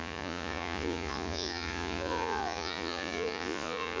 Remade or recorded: remade